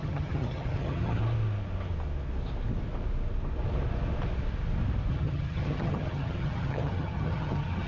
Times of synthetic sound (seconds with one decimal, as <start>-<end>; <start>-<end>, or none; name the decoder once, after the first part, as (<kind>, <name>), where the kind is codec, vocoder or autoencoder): 0.0-1.2 (vocoder, HiFi-GAN); 5.1-7.9

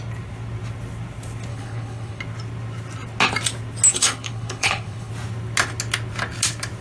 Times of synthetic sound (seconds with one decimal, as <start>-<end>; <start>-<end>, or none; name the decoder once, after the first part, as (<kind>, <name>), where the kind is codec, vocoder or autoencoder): 1.5-2.2 (codec, HILCodec); 3.9-5.1

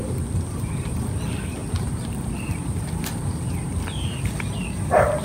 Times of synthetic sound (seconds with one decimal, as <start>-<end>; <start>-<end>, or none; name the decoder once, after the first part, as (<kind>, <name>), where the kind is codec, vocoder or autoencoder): 0.0-5.2 (vocoder, BigVGAN v2)

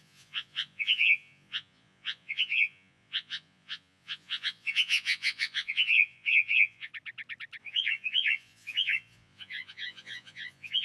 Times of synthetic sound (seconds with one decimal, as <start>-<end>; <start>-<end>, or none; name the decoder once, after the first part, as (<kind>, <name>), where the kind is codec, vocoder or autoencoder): 0.0-6.9 (vocoder, Vocos); 7.6-10.8